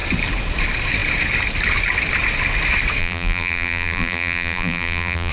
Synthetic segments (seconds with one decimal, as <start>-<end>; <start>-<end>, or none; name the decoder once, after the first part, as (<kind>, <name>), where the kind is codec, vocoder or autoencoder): 3.0-5.3 (vocoder, BigVGAN v2)